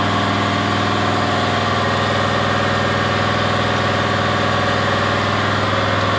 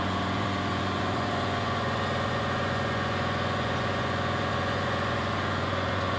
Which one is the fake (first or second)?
second